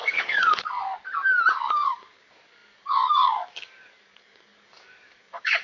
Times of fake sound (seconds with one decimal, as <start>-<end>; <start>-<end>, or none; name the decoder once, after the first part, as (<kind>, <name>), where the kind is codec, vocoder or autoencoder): 0.0-0.9 (codec, DAC); 1.5-5.6